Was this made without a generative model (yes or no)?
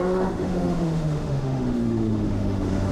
no